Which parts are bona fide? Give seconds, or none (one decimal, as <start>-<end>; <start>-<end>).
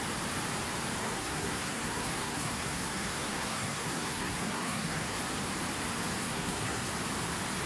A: 0.0-1.0; 5.2-6.2; 6.9-7.7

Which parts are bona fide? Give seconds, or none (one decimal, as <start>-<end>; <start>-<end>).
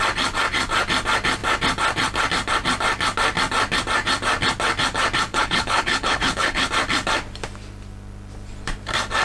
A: 0.0-5.3; 6.7-9.2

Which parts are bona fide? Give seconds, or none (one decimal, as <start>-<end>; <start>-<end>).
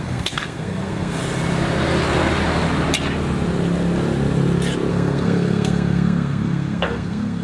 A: 1.2-4.9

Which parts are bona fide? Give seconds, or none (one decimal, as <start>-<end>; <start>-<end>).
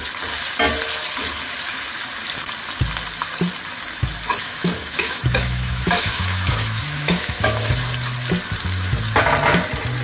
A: 0.0-4.4; 7.7-10.0